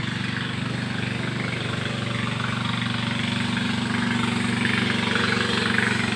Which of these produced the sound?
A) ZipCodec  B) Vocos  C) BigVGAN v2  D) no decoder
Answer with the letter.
D